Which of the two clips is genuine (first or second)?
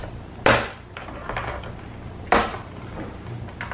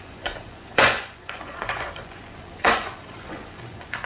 first